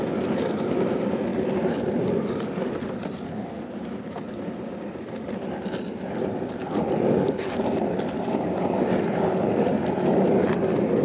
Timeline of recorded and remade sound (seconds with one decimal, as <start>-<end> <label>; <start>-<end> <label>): 0.0-11.0 recorded